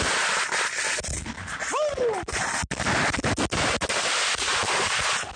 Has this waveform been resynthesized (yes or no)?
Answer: no